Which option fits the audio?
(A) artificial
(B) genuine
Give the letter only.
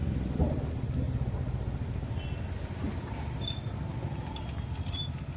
B